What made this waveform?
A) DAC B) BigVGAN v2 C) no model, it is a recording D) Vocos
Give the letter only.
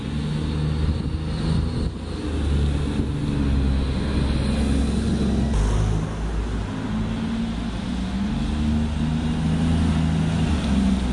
C